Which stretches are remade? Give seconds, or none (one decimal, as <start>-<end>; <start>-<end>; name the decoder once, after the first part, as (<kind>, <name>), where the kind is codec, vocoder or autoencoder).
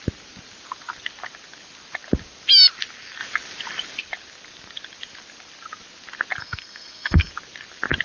6.4-7.3 (codec, SNAC)